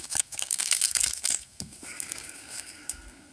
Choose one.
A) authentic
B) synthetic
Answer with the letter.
B